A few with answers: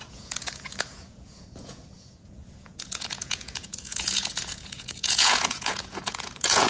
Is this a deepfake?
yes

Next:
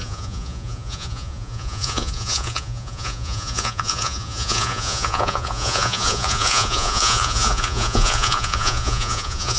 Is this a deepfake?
yes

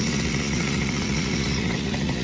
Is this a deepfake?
yes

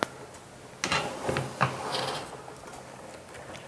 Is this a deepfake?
no